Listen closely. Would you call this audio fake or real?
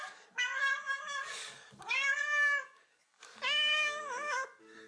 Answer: fake